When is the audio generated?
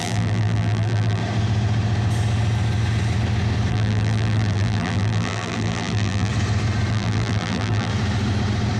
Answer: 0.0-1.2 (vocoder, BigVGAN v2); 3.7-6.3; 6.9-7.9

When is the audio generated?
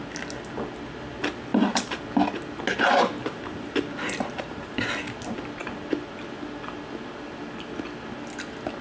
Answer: 1.5-2.0 (vocoder, BigVGAN v2); 3.2-4.9